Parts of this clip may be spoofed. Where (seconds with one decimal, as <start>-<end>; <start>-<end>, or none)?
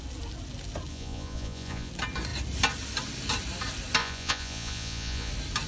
0.9-1.9; 4.0-5.3